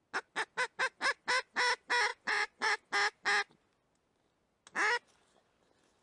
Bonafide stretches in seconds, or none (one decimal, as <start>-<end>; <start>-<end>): 0.0-2.1; 2.7-6.0